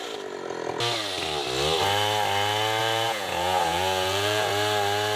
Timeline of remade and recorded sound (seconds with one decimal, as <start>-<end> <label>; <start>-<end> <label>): 0.0-2.8 recorded; 2.8-4.5 remade; 4.5-5.2 recorded